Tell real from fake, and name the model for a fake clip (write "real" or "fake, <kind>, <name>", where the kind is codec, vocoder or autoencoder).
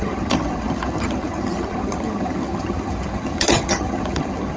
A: fake, vocoder, HiFi-GAN